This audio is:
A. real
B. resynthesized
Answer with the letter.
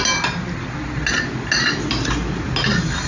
A